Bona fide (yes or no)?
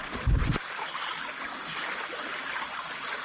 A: yes